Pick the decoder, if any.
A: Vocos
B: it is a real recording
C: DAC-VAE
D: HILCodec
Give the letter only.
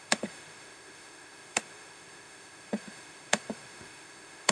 C